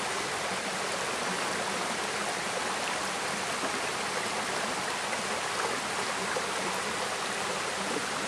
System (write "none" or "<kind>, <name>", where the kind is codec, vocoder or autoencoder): none